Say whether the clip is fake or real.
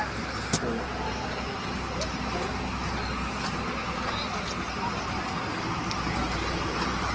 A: real